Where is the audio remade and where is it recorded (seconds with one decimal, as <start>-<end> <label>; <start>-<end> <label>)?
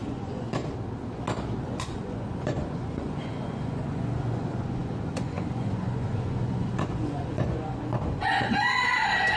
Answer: 0.0-0.6 remade; 0.6-1.6 recorded; 1.6-9.4 remade